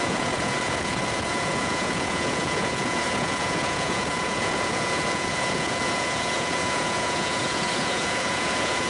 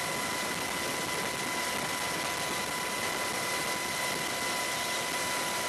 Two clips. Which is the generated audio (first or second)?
first